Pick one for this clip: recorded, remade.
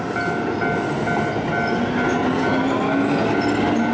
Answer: recorded